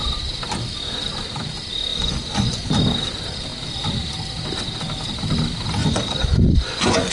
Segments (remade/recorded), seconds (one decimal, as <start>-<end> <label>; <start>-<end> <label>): 0.0-1.9 recorded; 1.9-2.7 remade; 2.7-5.8 recorded; 5.8-7.1 remade